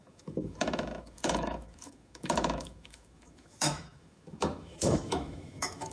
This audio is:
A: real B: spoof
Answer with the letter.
B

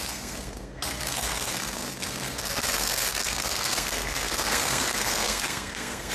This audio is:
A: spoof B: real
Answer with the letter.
A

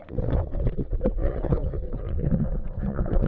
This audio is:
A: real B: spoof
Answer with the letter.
B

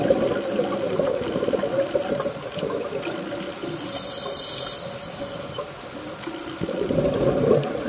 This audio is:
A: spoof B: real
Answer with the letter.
B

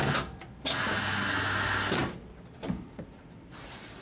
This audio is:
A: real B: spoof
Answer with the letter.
A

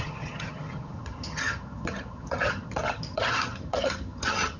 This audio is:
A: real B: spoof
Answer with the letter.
B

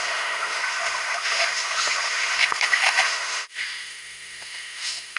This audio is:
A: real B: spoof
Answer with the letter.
B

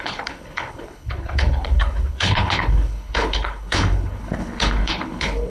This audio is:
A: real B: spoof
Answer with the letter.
B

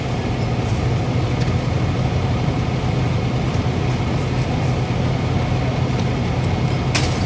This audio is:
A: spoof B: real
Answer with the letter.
B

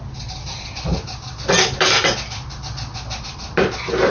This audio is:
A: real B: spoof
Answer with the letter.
A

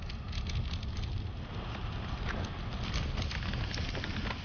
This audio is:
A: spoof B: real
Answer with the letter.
B